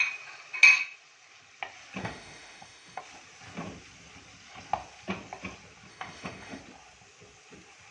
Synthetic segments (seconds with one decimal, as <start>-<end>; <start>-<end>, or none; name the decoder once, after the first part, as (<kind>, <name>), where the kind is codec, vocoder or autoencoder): 2.0-3.0 (autoencoder, DAC-VAE); 5.9-6.6